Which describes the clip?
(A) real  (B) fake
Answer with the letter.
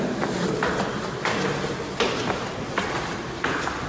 A